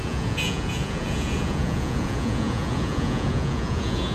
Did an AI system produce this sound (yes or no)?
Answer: yes